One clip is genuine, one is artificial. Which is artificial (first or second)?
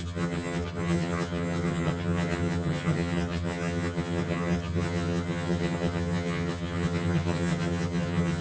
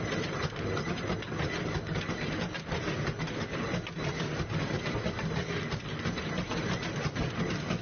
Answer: first